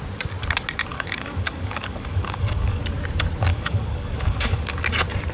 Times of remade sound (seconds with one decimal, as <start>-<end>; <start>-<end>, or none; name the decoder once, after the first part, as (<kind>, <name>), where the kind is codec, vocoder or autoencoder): 0.9-2.8 (codec, DAC); 3.5-4.8